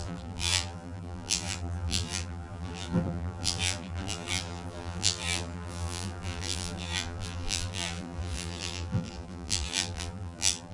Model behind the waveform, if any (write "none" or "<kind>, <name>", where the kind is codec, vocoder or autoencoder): vocoder, BigVGAN v2